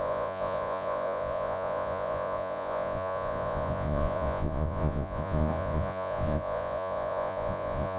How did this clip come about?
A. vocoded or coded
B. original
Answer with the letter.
A